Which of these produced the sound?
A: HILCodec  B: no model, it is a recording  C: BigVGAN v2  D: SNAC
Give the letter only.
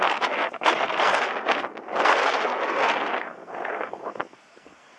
D